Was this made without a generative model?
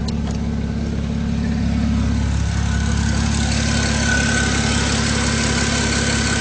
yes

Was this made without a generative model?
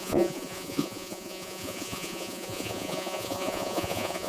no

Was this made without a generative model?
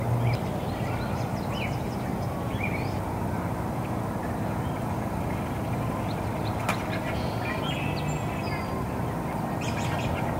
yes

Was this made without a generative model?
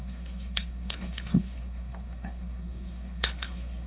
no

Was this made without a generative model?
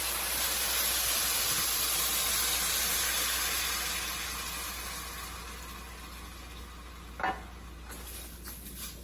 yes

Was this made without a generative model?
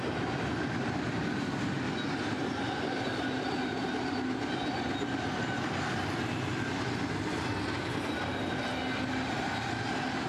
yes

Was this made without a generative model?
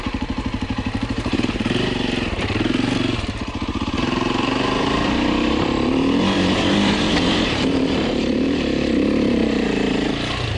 no